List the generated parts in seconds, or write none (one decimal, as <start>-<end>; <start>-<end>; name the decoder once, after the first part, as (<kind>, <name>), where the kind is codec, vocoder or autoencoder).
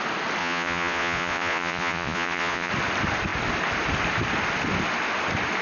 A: 0.4-2.7 (vocoder, Vocos)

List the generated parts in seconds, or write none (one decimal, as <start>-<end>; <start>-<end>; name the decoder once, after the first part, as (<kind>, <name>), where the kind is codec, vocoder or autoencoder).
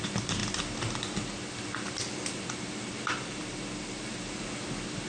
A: none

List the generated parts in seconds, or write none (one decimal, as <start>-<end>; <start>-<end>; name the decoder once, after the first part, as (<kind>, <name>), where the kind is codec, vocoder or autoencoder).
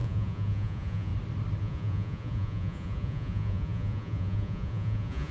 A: 0.0-1.1 (vocoder, Vocos); 1.6-5.3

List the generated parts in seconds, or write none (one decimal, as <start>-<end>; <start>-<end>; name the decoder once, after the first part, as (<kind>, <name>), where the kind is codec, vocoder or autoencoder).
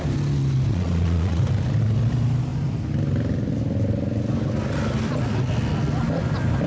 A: 0.7-1.4 (vocoder, Vocos)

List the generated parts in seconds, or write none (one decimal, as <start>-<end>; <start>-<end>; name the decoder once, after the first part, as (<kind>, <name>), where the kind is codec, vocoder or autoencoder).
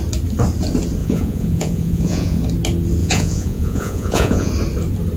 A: 1.0-2.4 (vocoder, Vocos); 3.0-4.5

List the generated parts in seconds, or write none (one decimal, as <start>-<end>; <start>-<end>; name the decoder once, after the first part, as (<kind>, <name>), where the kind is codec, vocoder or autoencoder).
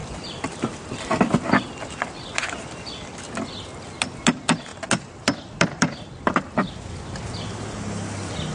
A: none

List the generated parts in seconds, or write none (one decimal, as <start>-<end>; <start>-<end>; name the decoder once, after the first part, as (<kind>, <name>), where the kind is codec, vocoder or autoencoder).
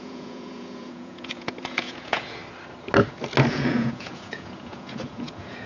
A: 0.0-2.4 (vocoder, Vocos); 3.5-5.7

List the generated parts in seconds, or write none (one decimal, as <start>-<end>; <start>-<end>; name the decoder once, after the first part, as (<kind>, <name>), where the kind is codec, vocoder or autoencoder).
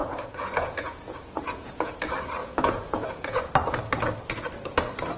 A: 0.0-1.9 (vocoder, Vocos); 2.4-3.5